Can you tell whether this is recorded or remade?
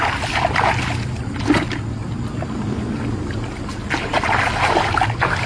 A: recorded